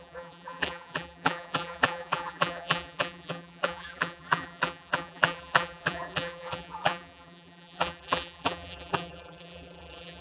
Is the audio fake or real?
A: fake